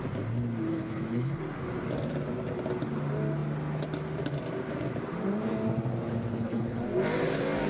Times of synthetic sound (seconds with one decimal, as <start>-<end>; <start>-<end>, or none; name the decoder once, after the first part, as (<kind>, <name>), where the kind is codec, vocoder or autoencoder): 0.7-1.4 (codec, HILCodec); 6.3-6.8